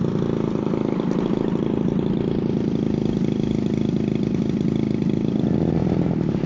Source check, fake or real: real